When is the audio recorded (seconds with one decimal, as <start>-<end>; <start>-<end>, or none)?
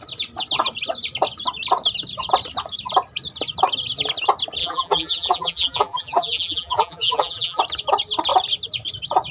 0.0-4.6; 7.6-9.3